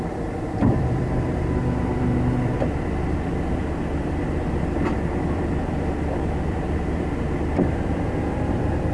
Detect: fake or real fake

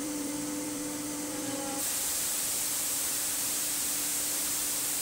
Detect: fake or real fake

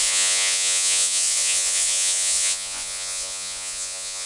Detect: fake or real fake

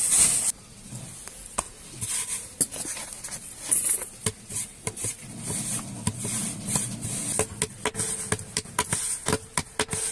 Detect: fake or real real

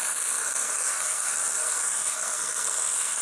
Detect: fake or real fake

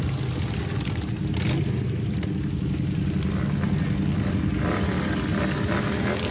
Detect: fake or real real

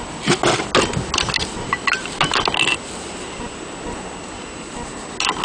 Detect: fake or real real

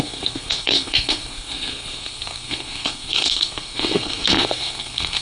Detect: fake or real fake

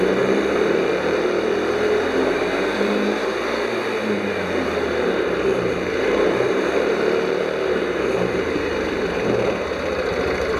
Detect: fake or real fake